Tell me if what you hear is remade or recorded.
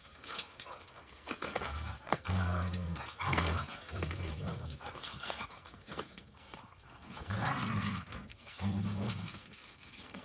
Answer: remade